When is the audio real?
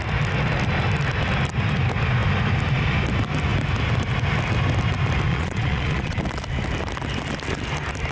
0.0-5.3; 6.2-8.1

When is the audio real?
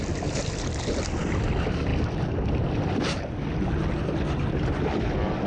0.0-5.5